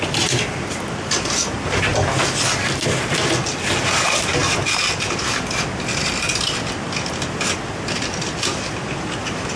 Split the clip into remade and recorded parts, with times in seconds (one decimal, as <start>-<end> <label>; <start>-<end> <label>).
0.0-9.6 recorded